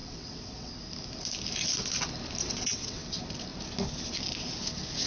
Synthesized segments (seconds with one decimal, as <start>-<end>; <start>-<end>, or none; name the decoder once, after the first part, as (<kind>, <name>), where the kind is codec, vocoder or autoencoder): 0.0-0.7 (vocoder, WaveNeXt); 2.4-3.0